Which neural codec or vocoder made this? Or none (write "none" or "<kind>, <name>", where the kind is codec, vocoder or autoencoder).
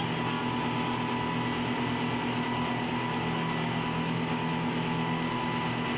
none